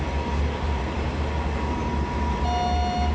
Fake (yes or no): no